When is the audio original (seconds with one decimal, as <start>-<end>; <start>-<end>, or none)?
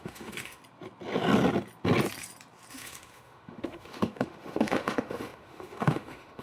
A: 0.6-2.7